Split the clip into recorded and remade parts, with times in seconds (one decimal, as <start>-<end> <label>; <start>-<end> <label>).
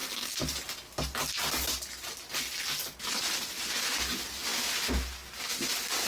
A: 0.0-6.1 recorded